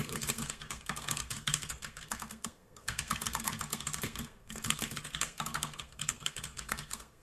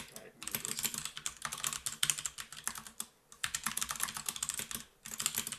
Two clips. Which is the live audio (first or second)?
second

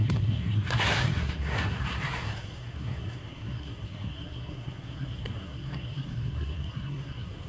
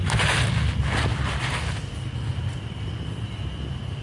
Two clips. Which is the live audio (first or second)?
second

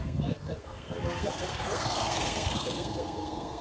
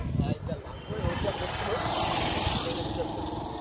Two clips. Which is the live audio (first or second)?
second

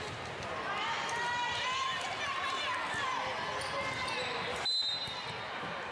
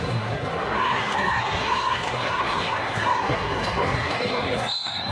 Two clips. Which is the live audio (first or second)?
first